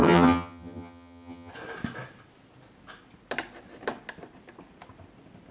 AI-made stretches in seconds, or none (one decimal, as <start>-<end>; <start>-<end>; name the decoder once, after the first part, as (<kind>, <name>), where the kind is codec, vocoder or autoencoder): 0.0-1.5 (vocoder, HiFi-GAN)